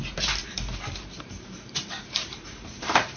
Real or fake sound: fake